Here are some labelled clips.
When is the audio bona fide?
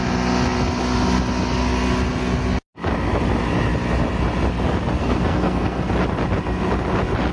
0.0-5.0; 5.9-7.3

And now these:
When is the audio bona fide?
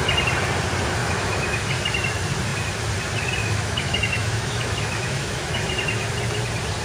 0.0-1.0; 1.7-3.4; 5.6-6.8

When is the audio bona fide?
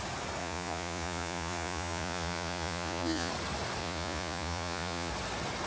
0.0-0.4; 3.3-3.8; 5.1-5.7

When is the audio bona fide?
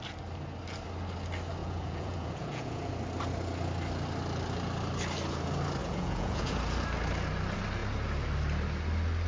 0.0-1.6; 2.9-5.8; 6.5-9.3